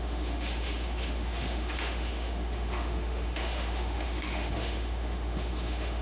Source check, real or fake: fake